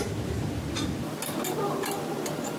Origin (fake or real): real